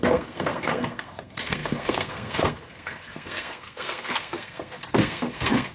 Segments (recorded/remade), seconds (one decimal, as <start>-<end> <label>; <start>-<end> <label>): 0.0-5.7 remade